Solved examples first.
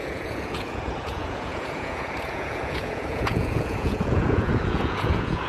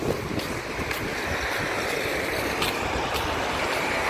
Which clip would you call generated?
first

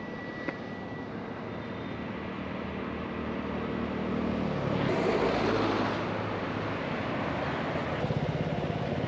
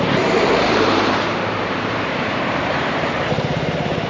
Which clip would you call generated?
second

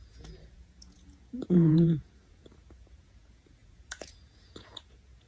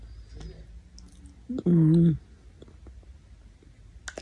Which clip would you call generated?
first